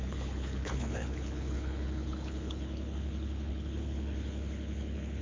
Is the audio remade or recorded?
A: remade